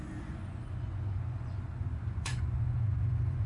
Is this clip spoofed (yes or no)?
yes